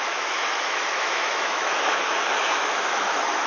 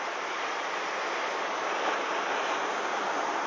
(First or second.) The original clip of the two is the second